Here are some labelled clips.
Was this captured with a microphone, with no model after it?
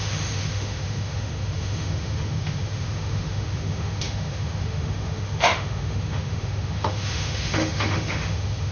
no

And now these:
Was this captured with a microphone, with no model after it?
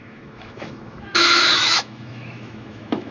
no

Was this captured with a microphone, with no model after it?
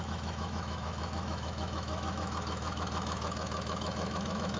no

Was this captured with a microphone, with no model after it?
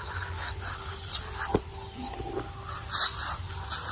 yes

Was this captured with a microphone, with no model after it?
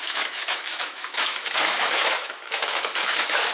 no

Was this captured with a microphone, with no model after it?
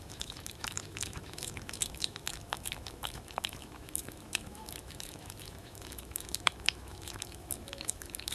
no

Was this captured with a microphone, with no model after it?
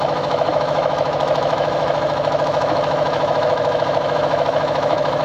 no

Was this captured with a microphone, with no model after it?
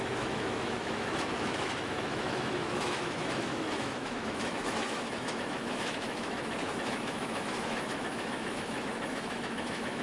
no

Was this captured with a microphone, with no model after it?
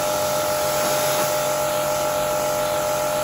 yes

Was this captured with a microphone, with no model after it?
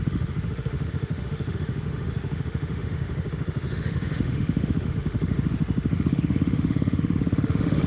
no